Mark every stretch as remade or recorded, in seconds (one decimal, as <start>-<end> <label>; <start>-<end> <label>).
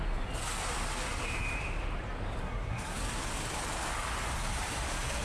0.0-2.4 recorded; 2.4-3.0 remade; 3.0-5.2 recorded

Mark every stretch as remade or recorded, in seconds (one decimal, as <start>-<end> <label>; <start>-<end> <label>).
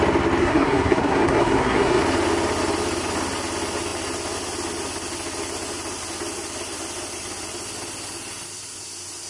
0.0-0.4 recorded; 0.4-2.0 remade; 2.0-9.3 recorded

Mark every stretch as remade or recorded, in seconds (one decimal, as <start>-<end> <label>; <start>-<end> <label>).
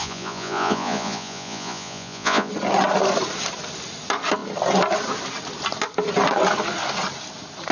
0.0-2.5 remade; 2.5-7.7 recorded